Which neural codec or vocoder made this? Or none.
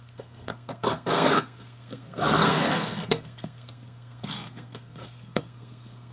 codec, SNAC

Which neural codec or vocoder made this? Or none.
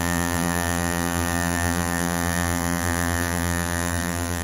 vocoder, BigVGAN v2